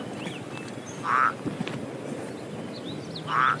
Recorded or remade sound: recorded